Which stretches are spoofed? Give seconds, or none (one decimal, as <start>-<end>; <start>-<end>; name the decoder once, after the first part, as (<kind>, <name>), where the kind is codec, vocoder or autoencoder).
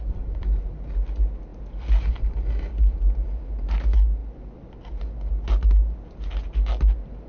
none